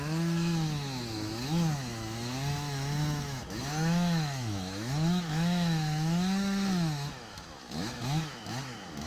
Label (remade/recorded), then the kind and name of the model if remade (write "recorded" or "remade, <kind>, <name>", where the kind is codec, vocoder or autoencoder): remade, autoencoder, DAC-VAE